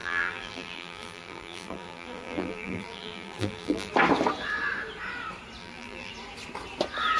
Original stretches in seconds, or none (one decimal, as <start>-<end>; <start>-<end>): 3.9-5.6; 6.1-7.2